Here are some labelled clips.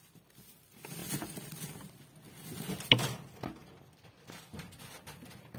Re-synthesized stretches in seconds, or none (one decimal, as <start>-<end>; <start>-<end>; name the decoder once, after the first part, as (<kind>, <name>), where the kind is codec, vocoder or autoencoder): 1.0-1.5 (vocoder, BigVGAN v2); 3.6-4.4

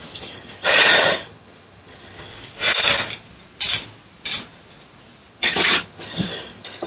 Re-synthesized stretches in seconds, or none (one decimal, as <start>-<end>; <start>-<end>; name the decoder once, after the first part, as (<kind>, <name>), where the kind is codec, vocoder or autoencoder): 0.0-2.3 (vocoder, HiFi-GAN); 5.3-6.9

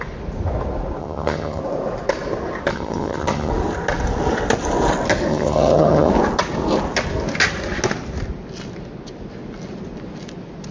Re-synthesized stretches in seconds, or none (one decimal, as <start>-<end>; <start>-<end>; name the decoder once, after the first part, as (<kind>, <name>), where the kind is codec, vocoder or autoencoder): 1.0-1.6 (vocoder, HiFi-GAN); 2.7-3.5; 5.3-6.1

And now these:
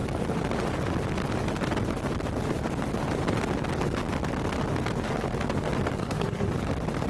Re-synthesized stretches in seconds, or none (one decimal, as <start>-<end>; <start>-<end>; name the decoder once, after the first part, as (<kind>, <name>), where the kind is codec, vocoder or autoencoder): 6.0-6.5 (codec, SNAC)

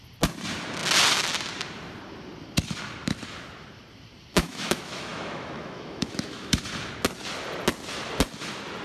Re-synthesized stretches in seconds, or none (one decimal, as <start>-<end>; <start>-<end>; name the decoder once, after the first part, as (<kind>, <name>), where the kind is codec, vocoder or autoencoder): 4.3-6.6 (autoencoder, DAC-VAE)

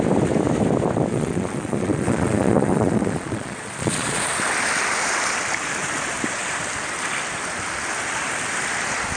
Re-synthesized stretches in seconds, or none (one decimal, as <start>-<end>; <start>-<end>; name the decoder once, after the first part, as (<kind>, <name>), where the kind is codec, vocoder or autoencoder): 1.1-4.2 (vocoder, Vocos)

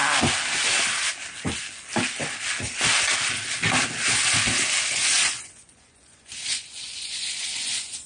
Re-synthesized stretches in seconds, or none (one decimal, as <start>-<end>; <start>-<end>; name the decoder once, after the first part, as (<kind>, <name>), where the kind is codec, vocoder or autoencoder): 4.9-8.1 (vocoder, Vocos)